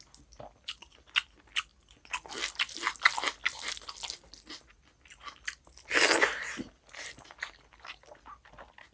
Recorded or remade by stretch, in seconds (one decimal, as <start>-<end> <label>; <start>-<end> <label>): 0.0-8.9 recorded